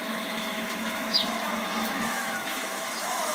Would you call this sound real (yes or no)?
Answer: no